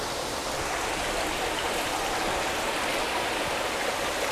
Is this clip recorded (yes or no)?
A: yes